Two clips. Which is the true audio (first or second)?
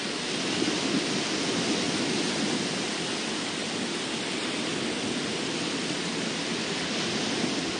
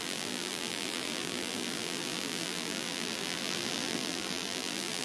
first